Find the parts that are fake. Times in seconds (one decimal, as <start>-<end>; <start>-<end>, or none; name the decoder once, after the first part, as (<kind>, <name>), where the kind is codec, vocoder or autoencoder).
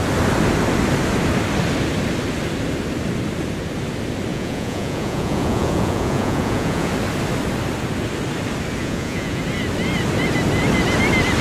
4.3-6.9 (vocoder, Vocos); 8.8-9.4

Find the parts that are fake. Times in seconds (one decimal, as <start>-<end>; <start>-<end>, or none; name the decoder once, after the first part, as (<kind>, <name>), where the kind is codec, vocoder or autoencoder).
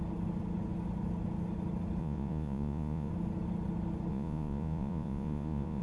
2.0-3.1 (vocoder, Vocos); 4.1-5.8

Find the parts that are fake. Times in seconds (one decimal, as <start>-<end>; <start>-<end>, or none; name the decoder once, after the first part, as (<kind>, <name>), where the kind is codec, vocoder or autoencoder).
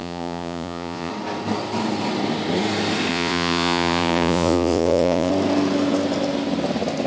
0.0-1.1 (vocoder, Vocos); 3.1-5.3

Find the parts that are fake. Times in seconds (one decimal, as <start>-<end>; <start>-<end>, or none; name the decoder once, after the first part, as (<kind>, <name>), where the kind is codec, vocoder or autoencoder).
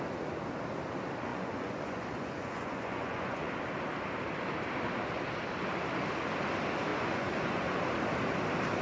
1.3-3.5 (vocoder, Vocos); 6.9-7.8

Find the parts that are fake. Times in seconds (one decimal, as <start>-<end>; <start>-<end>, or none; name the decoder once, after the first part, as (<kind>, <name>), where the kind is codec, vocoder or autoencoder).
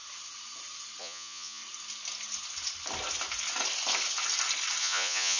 1.0-1.6 (vocoder, Vocos); 4.8-5.4